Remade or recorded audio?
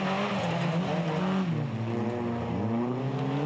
recorded